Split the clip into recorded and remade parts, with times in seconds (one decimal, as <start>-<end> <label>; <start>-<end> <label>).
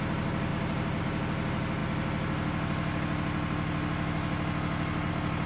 0.0-5.5 recorded